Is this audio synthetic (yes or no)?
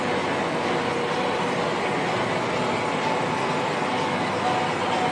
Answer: no